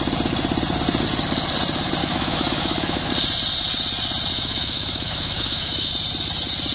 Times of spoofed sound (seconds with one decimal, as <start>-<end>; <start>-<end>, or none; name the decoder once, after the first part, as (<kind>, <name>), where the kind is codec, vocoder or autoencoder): 2.0-3.1 (autoencoder, DAC-VAE); 4.3-5.9